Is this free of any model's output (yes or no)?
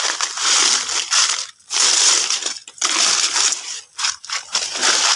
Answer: yes